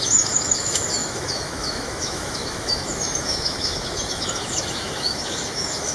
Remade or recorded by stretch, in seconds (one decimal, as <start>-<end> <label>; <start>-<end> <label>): 0.0-5.9 remade